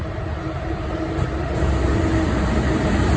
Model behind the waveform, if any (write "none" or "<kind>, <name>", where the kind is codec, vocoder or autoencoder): none